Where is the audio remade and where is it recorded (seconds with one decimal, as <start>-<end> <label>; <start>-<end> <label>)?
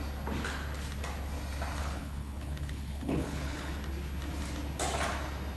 0.0-1.8 recorded; 1.8-3.7 remade; 3.7-5.6 recorded